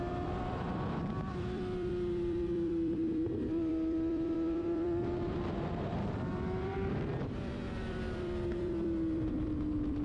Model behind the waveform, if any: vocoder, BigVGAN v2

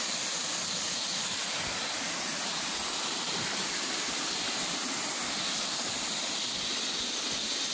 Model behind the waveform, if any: none